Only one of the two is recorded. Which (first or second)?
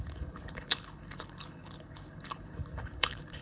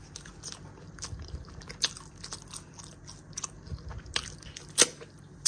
second